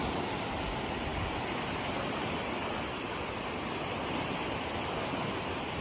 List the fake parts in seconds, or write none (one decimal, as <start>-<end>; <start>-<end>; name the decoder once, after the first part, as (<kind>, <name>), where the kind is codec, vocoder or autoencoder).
none